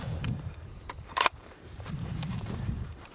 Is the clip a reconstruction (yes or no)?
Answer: yes